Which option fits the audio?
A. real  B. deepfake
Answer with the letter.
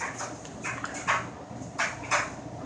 A